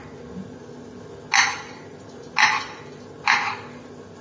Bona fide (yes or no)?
yes